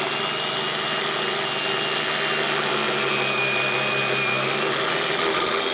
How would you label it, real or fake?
real